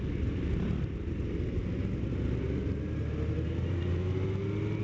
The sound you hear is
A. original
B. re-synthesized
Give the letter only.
A